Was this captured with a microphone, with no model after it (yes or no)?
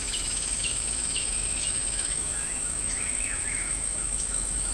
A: no